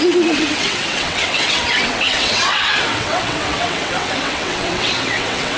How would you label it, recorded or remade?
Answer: remade